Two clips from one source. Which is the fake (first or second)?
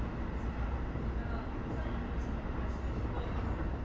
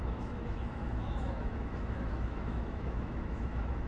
second